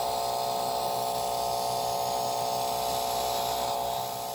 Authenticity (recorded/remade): recorded